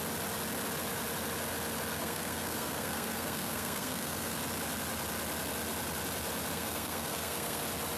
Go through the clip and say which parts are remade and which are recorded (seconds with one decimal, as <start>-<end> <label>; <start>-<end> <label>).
0.0-1.9 recorded; 1.9-4.4 remade; 4.4-6.5 recorded; 6.5-7.6 remade; 7.6-8.0 recorded